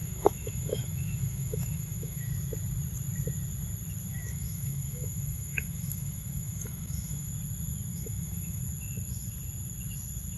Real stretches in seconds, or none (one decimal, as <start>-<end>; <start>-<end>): 2.3-4.1; 7.3-7.9; 8.6-10.4